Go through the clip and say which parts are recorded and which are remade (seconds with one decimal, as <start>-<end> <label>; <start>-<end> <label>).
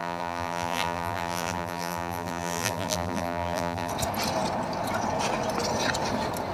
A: 0.0-3.9 remade; 3.9-6.5 recorded